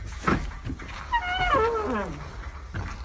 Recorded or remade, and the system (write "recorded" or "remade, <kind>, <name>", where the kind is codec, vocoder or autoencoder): recorded